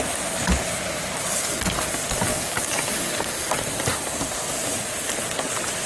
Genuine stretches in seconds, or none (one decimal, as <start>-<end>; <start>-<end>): 0.0-2.3; 3.5-5.9